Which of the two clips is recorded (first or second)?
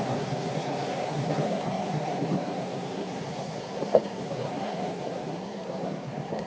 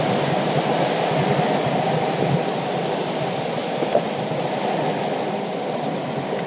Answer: second